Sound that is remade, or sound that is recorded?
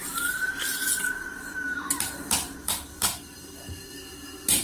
remade